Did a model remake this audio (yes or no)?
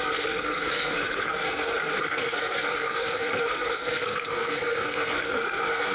yes